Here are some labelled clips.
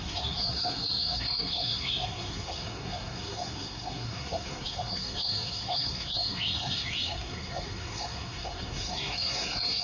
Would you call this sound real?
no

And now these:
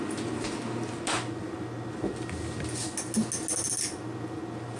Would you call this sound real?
yes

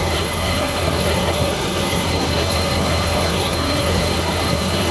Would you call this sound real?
no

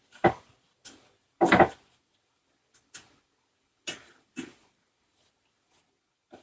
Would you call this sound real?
yes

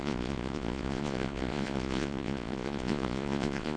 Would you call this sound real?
no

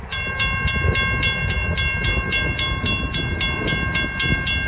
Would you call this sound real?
yes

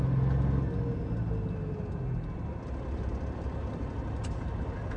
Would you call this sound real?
yes